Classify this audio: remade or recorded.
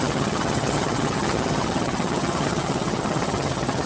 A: remade